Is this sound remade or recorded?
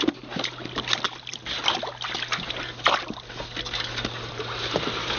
recorded